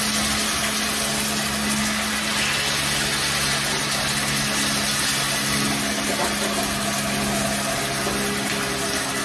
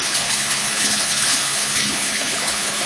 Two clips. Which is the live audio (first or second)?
first